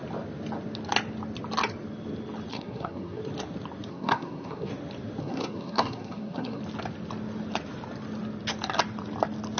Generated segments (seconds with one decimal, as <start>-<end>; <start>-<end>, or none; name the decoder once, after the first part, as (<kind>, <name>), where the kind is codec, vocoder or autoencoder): 2.5-3.2 (codec, SNAC); 3.9-4.7; 5.2-6.6